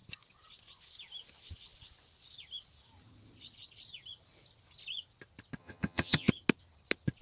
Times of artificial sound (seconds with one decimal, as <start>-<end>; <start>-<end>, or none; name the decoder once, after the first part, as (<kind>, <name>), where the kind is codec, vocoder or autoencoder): 5.6-6.3 (vocoder, HiFi-GAN)